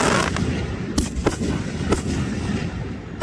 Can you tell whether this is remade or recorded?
recorded